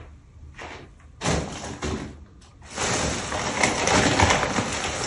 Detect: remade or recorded recorded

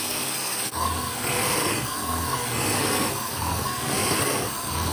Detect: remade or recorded remade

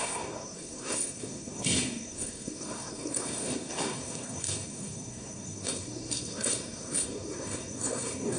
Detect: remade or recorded remade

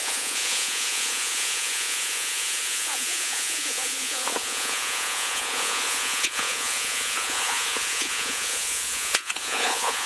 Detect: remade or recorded remade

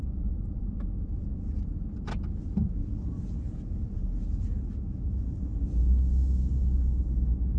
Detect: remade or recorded recorded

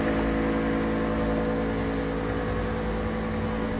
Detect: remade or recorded recorded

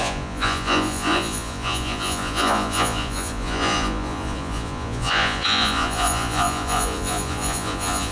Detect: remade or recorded remade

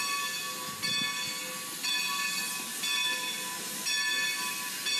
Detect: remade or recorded recorded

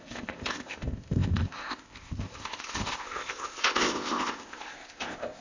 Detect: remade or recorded remade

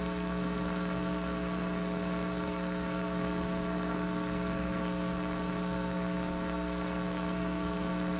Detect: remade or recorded remade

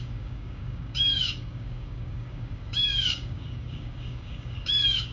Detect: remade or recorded remade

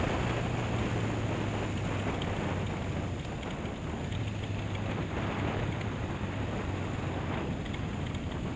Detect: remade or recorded recorded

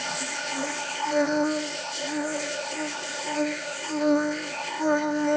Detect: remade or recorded remade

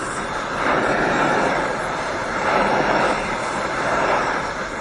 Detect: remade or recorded remade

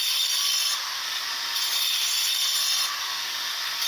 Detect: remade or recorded remade